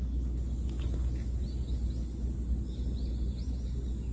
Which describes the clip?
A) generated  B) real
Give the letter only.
B